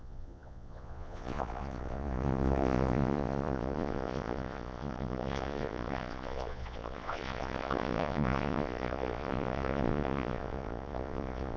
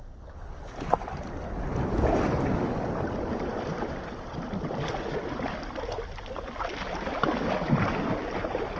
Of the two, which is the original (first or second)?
second